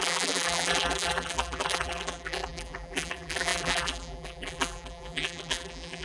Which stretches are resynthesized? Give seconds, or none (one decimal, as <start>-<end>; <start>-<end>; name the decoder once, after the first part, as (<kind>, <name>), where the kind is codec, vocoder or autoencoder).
0.0-6.0 (vocoder, BigVGAN v2)